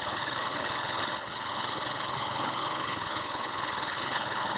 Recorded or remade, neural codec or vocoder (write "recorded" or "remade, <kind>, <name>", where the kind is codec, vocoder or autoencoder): remade, codec, HILCodec